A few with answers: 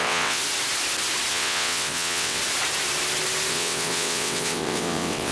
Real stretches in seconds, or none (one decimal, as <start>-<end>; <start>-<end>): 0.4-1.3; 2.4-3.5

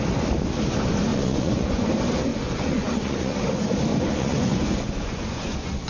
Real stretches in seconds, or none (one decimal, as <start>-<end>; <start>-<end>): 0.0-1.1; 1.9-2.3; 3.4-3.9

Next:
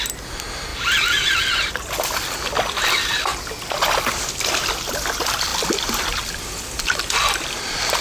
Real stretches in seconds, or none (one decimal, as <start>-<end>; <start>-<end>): 0.0-8.0

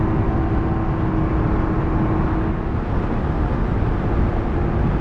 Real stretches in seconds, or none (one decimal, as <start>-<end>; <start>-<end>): 0.0-5.0